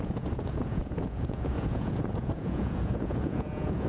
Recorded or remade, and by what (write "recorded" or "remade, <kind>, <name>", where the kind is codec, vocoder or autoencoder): remade, vocoder, Vocos